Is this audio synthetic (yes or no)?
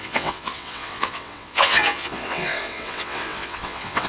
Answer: yes